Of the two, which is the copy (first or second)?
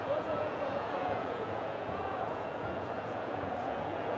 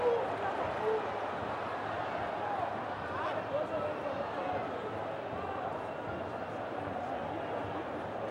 first